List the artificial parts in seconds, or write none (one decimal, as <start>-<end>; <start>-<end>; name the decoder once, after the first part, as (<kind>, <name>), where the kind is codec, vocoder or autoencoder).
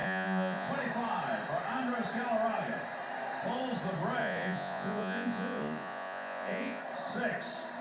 0.0-0.7 (vocoder, Vocos); 4.2-6.8